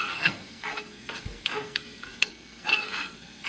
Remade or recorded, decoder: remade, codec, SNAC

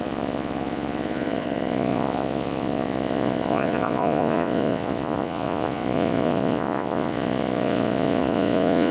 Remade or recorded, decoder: remade, vocoder, Vocos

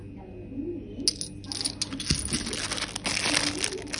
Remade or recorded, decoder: recorded